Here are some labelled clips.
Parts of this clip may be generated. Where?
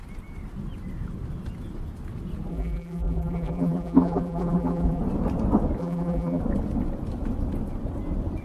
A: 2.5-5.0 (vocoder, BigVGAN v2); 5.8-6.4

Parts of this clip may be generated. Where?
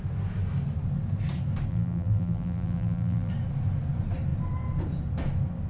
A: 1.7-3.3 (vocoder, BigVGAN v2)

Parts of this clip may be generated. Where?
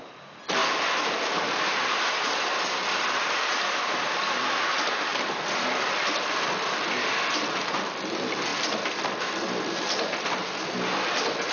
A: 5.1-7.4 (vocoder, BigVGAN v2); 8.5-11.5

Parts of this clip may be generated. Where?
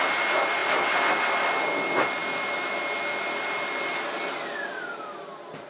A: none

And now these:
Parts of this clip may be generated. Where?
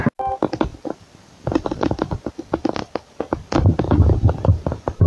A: 0.7-2.3 (vocoder, BigVGAN v2)